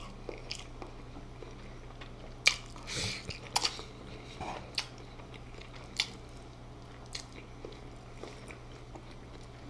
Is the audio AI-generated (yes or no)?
no